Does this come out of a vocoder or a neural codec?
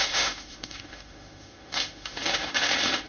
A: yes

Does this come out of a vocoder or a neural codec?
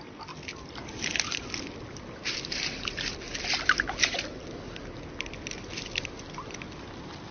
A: no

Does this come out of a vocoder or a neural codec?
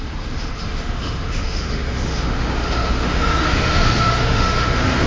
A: yes